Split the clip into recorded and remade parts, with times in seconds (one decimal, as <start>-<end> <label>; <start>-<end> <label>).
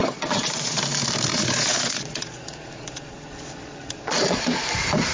0.0-0.8 remade; 0.8-1.3 recorded; 1.3-4.4 remade; 4.4-5.1 recorded